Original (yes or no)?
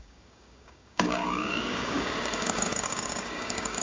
no